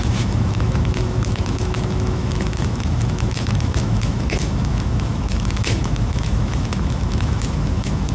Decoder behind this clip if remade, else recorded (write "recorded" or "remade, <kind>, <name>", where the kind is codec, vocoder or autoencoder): remade, autoencoder, DAC-VAE